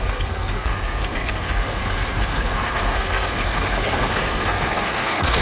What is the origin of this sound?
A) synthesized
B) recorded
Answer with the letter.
A